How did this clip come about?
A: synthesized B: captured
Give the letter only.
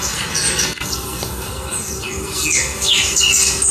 A